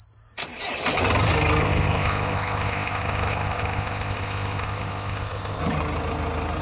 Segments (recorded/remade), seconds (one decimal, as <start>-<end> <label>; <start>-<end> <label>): 0.0-1.6 recorded; 1.6-5.6 remade; 5.6-6.6 recorded